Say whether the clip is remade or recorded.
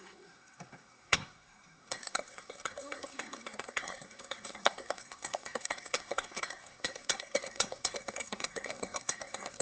remade